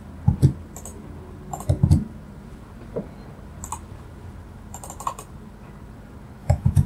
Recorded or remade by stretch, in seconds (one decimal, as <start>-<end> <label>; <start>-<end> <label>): 0.0-6.4 recorded; 6.4-6.9 remade

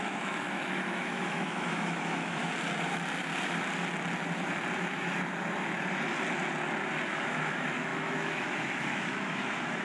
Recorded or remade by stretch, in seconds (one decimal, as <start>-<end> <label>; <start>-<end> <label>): 0.0-2.5 remade; 2.5-7.1 recorded; 7.1-9.8 remade

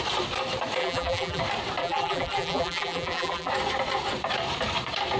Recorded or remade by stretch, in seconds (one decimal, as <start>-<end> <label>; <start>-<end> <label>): 0.0-0.8 recorded; 0.8-1.4 remade; 1.4-1.8 recorded; 1.8-3.5 remade; 3.5-5.2 recorded

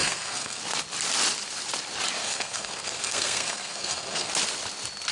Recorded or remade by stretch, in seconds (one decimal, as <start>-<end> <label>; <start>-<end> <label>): 0.0-0.6 remade; 0.6-2.2 recorded; 2.2-4.3 remade; 4.3-5.1 recorded